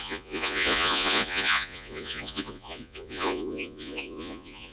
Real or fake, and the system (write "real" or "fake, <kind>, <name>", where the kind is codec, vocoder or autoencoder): fake, vocoder, Vocos